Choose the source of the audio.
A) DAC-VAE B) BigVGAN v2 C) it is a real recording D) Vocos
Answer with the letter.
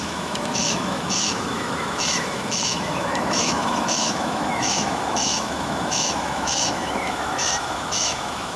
A